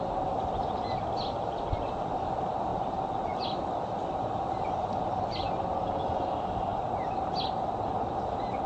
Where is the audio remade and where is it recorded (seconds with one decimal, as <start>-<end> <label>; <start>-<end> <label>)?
0.0-2.7 recorded; 2.7-5.5 remade; 5.5-8.7 recorded